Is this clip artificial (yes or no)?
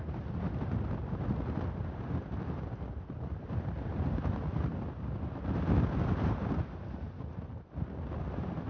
no